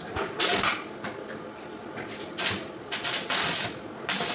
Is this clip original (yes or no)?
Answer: yes